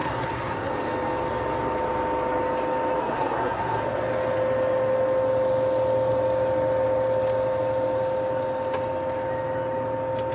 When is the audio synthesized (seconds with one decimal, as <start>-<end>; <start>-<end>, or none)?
0.0-0.7; 3.0-3.8